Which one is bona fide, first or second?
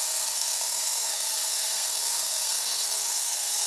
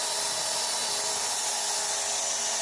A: second